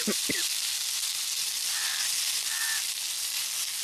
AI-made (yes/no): no